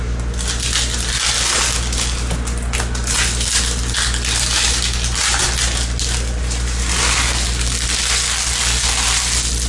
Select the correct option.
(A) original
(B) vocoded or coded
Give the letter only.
A